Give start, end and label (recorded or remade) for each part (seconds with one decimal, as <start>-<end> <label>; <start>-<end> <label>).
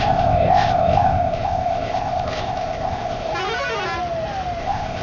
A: 0.0-3.3 remade; 3.3-4.6 recorded; 4.6-5.0 remade